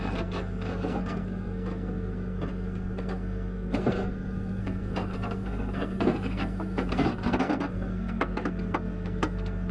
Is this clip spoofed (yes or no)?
yes